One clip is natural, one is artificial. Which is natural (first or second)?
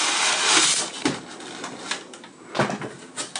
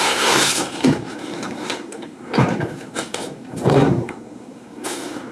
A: first